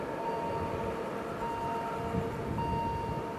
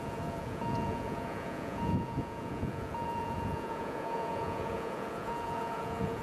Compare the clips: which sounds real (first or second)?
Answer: first